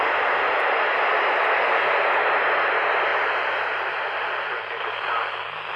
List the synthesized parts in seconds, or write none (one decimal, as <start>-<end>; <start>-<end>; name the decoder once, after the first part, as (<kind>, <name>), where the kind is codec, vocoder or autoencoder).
none